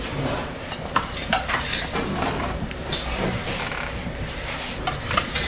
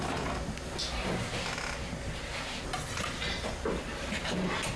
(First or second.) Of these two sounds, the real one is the second